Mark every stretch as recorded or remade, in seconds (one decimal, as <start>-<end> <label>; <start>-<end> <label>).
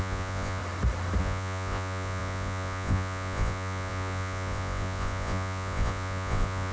0.0-0.6 remade; 0.6-1.2 recorded; 1.2-6.7 remade